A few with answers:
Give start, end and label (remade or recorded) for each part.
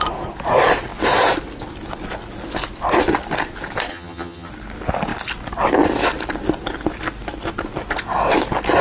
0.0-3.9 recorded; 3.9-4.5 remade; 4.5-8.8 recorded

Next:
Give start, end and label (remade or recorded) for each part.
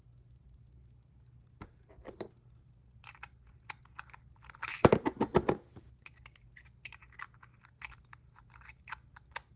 0.0-9.6 recorded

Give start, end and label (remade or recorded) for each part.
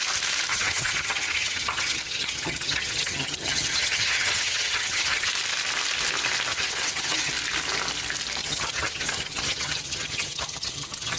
0.0-0.5 recorded; 0.5-5.3 remade; 5.3-6.5 recorded; 6.5-7.3 remade; 7.3-8.4 recorded; 8.4-11.2 remade